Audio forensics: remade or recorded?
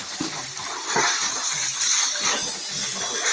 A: recorded